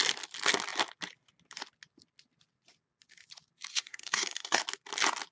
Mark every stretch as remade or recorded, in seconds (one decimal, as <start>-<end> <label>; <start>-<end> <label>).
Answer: 0.0-3.7 recorded; 3.7-4.6 remade; 4.6-5.3 recorded